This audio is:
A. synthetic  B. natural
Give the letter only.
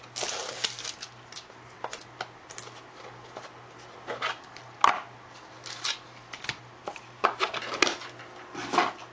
B